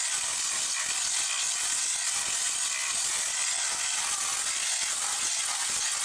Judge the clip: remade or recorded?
recorded